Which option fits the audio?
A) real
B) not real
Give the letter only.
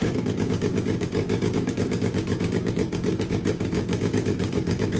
B